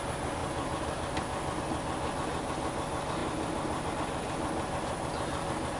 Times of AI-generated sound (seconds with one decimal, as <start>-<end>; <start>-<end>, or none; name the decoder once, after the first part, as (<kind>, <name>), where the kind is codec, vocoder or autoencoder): none